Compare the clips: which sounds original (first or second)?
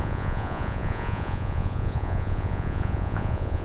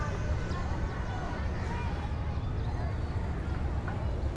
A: second